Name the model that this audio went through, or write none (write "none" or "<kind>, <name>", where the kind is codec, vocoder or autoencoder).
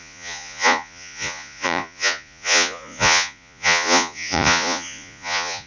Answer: vocoder, Vocos